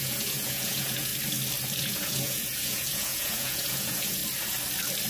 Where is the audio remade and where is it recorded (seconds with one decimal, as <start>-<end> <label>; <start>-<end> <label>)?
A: 0.0-1.1 remade; 1.1-1.8 recorded; 1.8-4.2 remade; 4.2-5.1 recorded